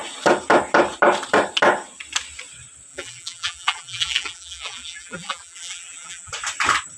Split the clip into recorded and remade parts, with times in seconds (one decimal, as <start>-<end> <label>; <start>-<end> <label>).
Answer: 0.0-2.9 recorded; 2.9-6.3 remade; 6.3-7.0 recorded